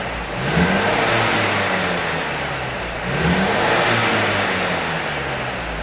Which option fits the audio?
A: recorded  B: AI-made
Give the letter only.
A